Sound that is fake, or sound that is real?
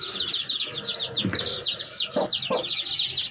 real